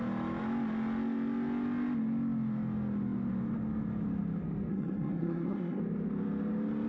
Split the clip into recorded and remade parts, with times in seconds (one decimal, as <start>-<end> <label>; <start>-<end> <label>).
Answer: 0.0-4.7 recorded; 4.7-5.8 remade; 5.8-6.9 recorded